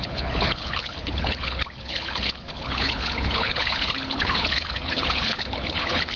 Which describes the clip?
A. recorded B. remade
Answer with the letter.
B